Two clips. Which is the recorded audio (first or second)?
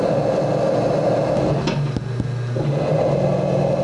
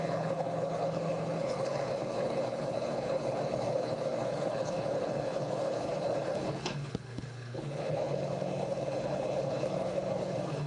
first